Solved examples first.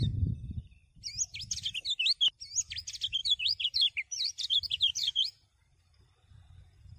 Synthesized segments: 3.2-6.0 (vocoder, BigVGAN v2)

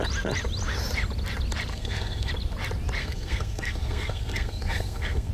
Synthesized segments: 1.7-2.3 (codec, SNAC); 3.0-5.3